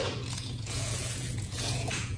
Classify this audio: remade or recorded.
remade